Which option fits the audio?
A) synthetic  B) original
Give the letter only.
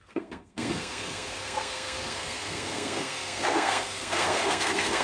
A